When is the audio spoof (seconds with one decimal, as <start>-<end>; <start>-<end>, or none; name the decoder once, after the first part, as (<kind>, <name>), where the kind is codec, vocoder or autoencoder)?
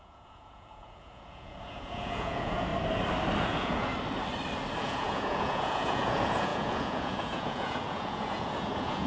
0.0-2.7 (vocoder, Vocos); 3.4-3.9; 4.8-9.1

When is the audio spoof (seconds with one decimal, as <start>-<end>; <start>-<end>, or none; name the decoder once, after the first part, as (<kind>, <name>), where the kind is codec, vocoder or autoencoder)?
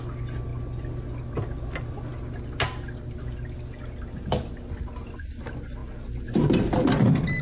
none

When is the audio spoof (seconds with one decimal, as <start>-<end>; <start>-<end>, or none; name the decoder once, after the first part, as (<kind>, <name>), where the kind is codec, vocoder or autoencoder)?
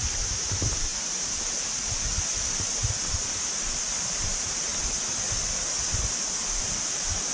0.0-0.9 (vocoder, BigVGAN v2); 1.4-2.1; 4.0-4.7; 6.6-7.3